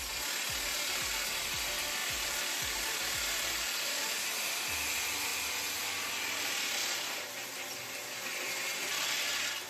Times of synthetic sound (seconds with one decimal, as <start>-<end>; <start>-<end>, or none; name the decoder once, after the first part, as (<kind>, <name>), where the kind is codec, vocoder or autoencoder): 2.0-4.5 (vocoder, BigVGAN v2); 6.8-8.4